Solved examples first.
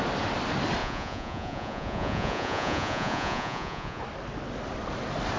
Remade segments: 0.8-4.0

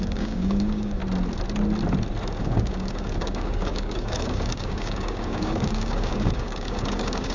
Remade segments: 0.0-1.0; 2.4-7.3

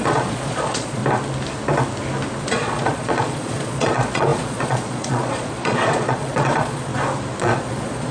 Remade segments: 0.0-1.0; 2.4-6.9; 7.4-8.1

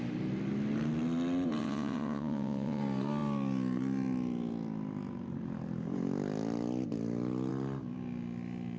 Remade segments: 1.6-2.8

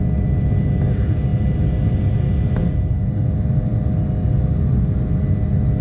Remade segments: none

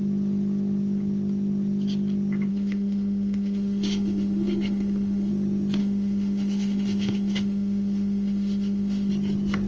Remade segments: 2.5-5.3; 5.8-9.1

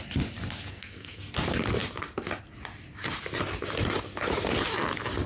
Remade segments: 0.7-1.2